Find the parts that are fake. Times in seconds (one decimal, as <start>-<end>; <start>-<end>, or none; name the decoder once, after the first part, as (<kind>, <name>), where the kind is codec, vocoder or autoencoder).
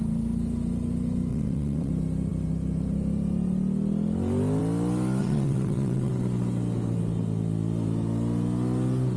1.3-1.9 (vocoder, WaveNeXt); 5.2-6.1